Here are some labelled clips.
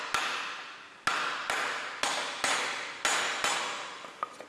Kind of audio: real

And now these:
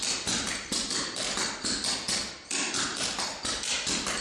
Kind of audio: real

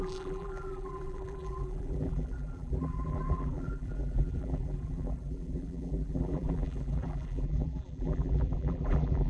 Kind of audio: fake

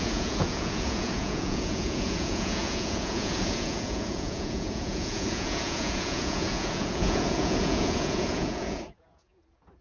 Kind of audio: fake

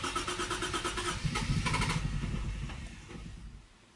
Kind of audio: real